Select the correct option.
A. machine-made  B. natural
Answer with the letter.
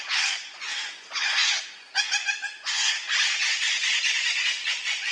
A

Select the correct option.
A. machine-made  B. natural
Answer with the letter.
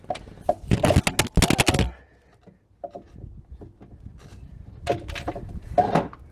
B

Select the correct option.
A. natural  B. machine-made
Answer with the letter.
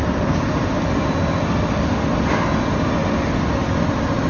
A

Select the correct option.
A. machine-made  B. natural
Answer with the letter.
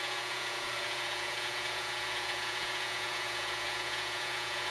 A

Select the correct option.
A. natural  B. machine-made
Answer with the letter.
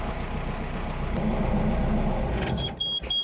A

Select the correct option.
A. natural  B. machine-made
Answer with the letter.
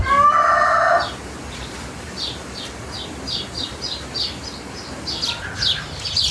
A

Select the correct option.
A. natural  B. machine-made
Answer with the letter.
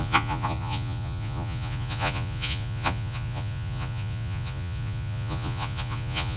B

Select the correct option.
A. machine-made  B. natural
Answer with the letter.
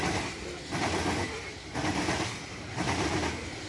B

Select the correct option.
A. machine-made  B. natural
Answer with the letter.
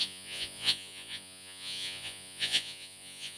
A